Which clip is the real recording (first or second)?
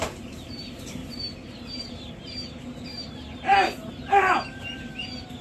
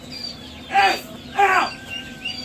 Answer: second